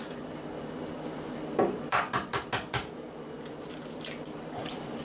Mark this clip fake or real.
fake